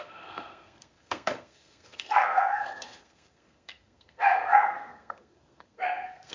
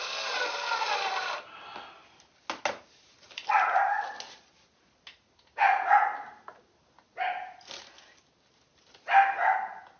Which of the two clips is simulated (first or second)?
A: first